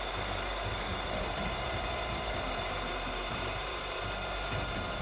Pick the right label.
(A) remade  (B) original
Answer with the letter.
A